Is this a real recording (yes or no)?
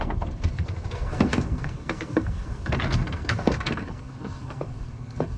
no